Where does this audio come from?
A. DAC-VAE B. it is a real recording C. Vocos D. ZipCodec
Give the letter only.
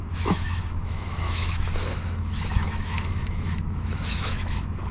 A